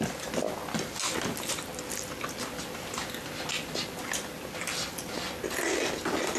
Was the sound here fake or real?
real